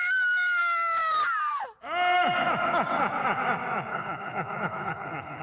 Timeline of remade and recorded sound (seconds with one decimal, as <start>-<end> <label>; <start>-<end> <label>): 0.0-3.9 recorded; 3.9-5.4 remade